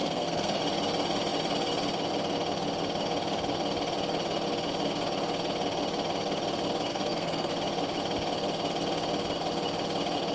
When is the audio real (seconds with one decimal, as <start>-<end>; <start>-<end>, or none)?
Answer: 0.6-6.9; 7.5-10.3